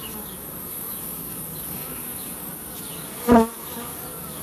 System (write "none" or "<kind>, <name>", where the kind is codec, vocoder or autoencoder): codec, DAC